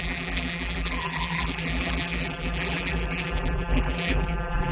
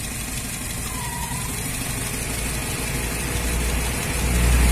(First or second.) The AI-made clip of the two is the first